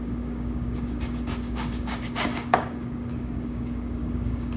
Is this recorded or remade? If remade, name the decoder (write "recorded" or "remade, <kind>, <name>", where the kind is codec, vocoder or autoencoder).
remade, codec, DAC